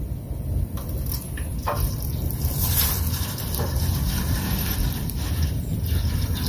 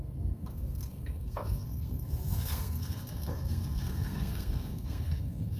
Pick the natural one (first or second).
first